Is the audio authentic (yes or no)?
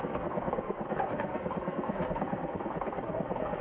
no